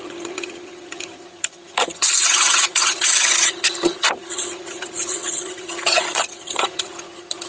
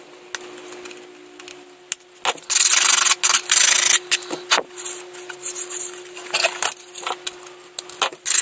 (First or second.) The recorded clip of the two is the second